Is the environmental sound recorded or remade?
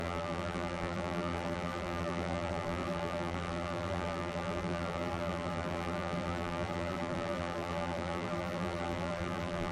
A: remade